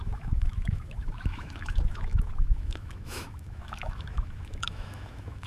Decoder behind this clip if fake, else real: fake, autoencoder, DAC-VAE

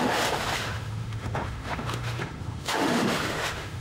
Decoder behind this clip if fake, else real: fake, autoencoder, DAC-VAE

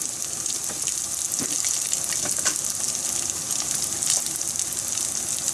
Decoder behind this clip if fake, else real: real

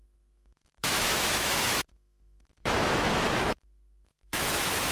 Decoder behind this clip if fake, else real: fake, autoencoder, DAC-VAE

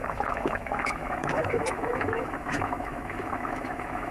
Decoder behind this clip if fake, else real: fake, autoencoder, DAC-VAE